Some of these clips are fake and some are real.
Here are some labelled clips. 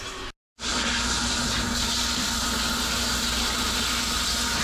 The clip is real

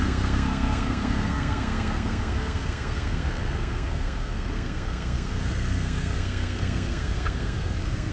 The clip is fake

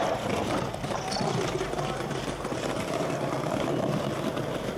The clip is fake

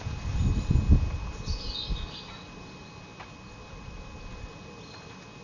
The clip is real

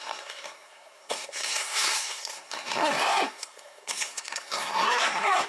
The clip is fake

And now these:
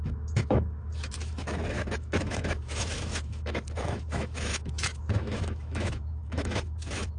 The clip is fake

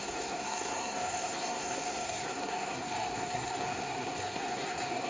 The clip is fake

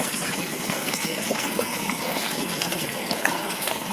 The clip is fake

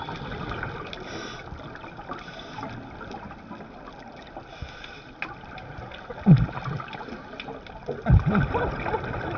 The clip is real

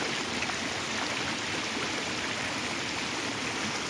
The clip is real